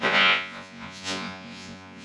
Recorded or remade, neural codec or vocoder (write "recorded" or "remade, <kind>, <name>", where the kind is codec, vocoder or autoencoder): remade, vocoder, Vocos